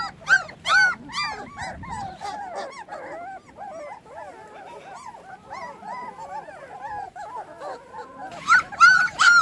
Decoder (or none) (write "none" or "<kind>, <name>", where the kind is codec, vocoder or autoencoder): none